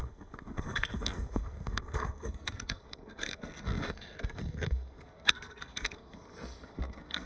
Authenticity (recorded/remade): remade